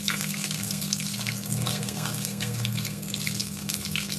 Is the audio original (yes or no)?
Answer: no